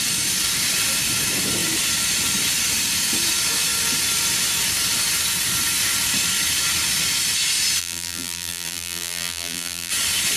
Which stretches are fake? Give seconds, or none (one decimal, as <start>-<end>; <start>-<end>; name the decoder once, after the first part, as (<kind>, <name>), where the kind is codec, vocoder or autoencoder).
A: 7.8-9.9 (vocoder, BigVGAN v2)